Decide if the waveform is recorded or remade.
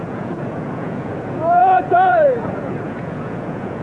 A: remade